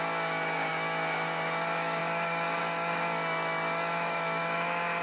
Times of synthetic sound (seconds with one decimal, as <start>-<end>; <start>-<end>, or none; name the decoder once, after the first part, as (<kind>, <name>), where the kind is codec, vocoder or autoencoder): 0.0-5.0 (codec, DAC)